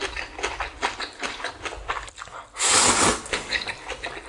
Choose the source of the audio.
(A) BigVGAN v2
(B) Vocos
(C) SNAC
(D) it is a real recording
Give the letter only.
D